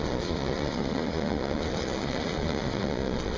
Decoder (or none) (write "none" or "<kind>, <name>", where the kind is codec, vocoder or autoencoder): vocoder, Vocos